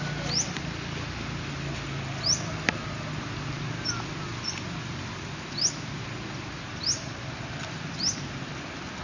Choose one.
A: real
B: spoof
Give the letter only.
A